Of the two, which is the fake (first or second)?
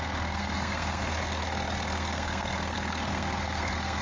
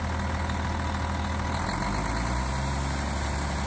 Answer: first